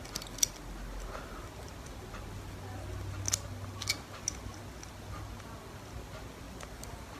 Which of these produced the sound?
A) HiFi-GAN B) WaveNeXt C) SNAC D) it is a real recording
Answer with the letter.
D